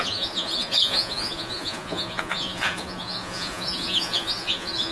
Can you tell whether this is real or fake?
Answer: fake